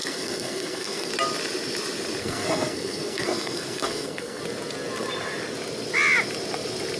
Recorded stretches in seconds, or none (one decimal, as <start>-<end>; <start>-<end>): 1.1-2.2; 4.4-7.0